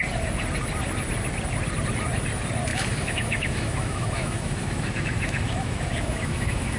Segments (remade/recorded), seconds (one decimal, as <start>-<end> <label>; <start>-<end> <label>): 0.0-2.7 recorded; 2.7-6.8 remade